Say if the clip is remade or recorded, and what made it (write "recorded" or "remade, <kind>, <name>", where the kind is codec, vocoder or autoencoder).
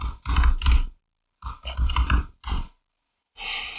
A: recorded